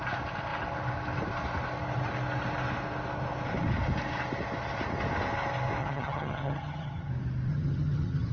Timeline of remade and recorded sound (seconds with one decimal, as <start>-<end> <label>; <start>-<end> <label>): 0.0-5.8 recorded; 5.8-7.1 remade; 7.1-7.5 recorded; 7.5-8.3 remade